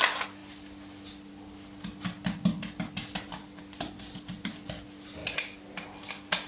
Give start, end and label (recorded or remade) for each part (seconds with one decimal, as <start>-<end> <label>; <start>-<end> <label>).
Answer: 0.0-6.5 recorded